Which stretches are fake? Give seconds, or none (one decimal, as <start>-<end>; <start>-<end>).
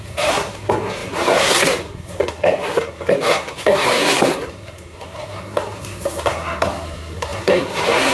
0.0-8.1